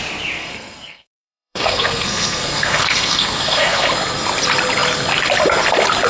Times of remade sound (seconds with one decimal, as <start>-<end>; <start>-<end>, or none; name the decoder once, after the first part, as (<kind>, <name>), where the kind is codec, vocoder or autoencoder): 0.4-3.9 (codec, SNAC)